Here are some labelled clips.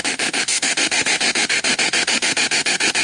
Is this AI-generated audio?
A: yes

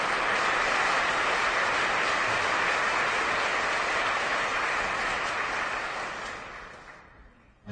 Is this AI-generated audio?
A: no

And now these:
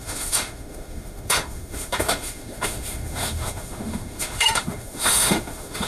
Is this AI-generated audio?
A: yes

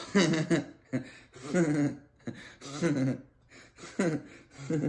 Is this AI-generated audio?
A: no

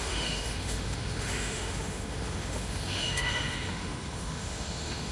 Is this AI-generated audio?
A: yes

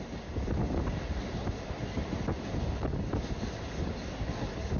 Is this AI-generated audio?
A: no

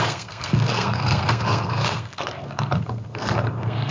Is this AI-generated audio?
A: yes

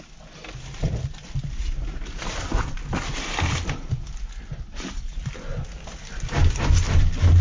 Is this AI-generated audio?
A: no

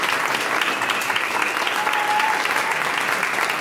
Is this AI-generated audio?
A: no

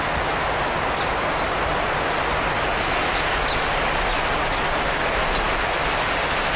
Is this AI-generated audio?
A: no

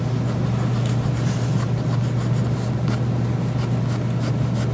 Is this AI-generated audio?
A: no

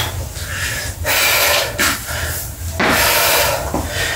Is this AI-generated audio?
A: no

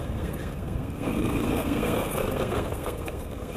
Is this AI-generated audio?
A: yes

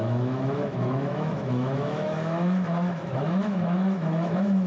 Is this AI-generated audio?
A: yes